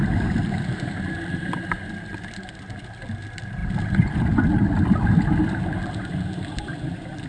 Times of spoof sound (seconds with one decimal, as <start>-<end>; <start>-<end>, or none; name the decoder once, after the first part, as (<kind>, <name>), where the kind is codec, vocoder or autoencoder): none